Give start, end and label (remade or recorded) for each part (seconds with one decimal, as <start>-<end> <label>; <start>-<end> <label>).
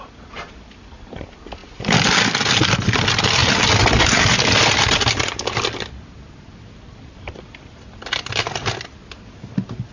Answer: 0.0-9.9 recorded